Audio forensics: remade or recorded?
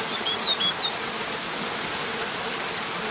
remade